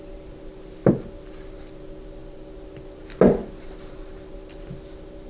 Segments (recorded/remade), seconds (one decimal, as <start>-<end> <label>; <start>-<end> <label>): 0.0-5.3 recorded